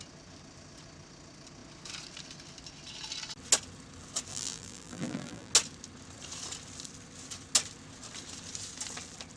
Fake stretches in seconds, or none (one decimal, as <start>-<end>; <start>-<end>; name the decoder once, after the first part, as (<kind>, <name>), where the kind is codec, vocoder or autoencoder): 4.3-5.5 (vocoder, BigVGAN v2)